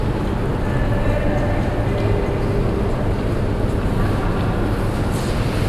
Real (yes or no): yes